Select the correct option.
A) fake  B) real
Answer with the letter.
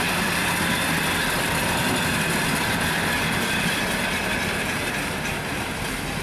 B